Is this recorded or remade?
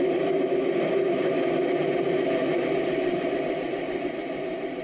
recorded